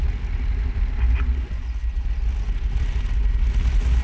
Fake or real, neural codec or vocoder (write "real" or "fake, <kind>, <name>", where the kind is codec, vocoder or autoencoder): real